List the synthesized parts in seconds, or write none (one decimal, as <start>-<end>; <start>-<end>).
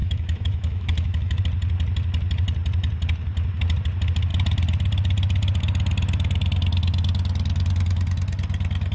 0.0-1.4